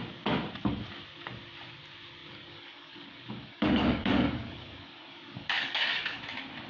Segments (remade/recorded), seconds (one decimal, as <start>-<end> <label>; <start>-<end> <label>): 0.0-2.2 recorded; 2.2-6.2 remade; 6.2-6.7 recorded